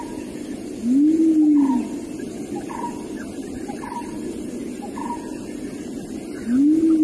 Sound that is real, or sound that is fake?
real